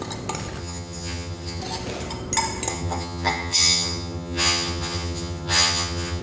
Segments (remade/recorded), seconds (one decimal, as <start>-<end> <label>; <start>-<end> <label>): 0.0-0.6 recorded; 0.6-1.6 remade; 1.6-2.7 recorded; 2.7-6.2 remade